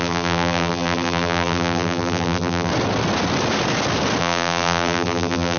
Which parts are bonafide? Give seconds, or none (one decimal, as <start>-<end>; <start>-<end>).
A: 2.7-4.2